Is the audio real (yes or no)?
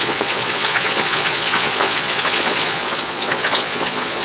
no